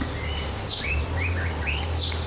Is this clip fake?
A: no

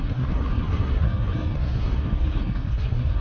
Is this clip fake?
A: yes